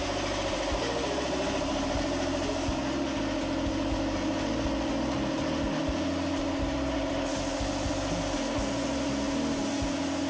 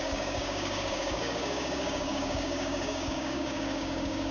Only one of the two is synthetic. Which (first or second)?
second